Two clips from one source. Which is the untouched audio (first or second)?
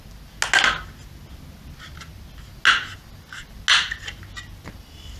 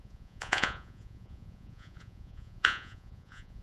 first